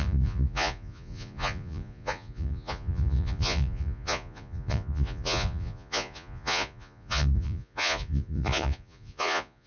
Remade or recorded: remade